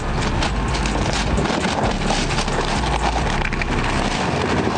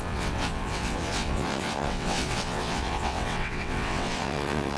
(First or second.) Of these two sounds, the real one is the first